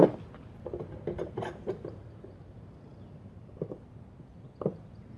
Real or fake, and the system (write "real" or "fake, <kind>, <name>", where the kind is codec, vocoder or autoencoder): real